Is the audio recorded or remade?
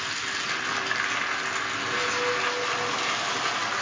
recorded